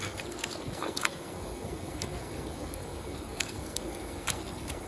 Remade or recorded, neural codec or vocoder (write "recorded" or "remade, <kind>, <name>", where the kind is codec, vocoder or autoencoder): remade, codec, SNAC